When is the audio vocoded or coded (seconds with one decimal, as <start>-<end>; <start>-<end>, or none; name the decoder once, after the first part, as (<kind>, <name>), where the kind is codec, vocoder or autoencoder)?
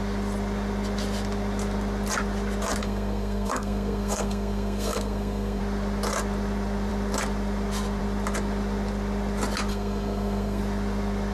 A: 2.8-5.6 (codec, SNAC); 9.7-10.6